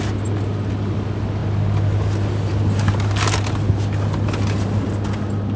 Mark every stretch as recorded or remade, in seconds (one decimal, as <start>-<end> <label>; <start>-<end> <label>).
0.0-5.6 recorded